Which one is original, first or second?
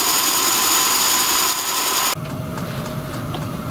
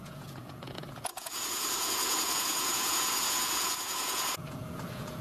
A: first